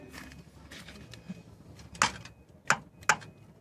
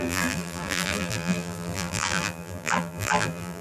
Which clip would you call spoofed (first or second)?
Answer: second